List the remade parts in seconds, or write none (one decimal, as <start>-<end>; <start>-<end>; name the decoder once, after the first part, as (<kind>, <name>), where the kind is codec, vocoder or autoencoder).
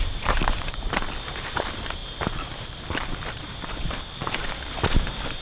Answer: 0.0-5.4 (vocoder, BigVGAN v2)